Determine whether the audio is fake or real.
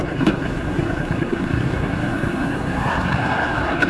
fake